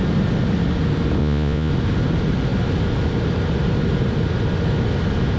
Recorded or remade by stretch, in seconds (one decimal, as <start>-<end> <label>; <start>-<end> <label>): 0.0-1.2 recorded; 1.2-1.7 remade; 1.7-5.4 recorded